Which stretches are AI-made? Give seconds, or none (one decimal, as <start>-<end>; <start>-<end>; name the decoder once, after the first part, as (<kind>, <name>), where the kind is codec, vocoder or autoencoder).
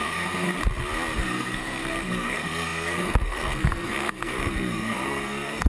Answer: 0.0-0.5 (codec, SNAC); 1.2-5.7